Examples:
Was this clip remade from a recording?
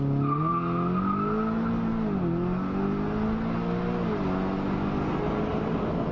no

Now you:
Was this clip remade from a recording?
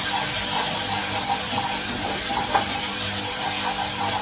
no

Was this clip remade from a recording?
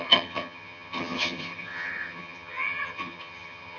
yes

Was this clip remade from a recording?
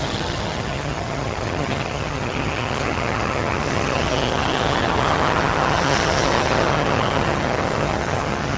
yes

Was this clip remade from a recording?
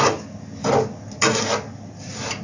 no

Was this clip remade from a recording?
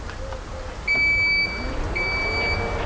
no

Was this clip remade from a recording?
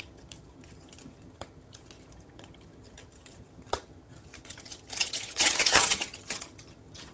yes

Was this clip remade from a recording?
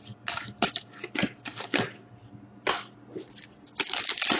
no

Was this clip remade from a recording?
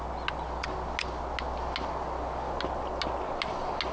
no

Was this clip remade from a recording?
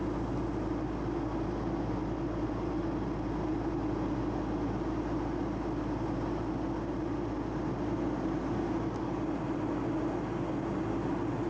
no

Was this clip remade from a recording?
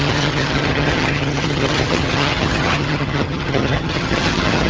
yes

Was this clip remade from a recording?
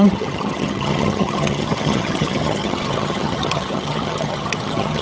yes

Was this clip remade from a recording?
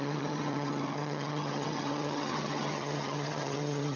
yes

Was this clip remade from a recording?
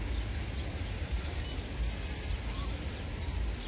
no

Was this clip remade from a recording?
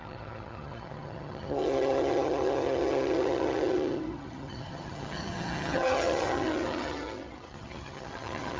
yes